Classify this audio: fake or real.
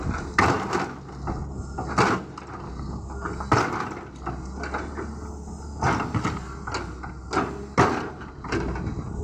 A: real